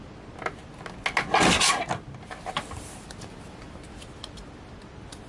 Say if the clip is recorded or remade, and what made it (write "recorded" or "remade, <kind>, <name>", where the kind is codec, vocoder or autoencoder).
recorded